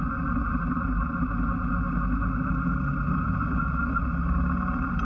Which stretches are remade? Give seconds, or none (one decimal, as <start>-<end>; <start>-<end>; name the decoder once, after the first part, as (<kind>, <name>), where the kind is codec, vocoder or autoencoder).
none